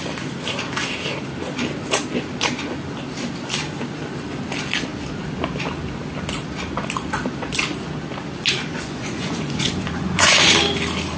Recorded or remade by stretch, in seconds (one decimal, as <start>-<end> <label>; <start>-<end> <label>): 0.0-8.7 recorded; 8.7-10.6 remade; 10.6-11.2 recorded